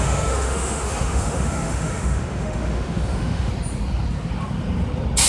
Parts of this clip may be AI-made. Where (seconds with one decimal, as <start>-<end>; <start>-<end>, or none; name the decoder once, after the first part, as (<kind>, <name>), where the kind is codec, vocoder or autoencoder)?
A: 0.0-3.5 (autoencoder, DAC-VAE)

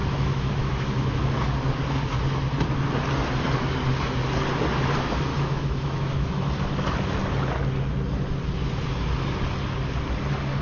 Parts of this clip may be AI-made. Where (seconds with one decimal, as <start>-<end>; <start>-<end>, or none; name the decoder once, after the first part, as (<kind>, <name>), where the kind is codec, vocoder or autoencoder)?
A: 0.0-1.3 (autoencoder, DAC-VAE); 5.3-6.5

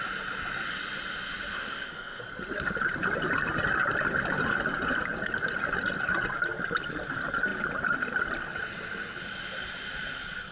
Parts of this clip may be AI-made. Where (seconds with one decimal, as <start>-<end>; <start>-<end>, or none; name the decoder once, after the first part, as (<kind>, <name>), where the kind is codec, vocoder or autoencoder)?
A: 1.5-2.2 (autoencoder, DAC-VAE)

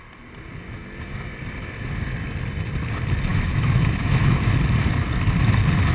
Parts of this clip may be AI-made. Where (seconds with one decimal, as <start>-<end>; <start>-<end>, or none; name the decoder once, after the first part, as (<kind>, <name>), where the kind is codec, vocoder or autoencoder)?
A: 3.3-4.4 (autoencoder, DAC-VAE)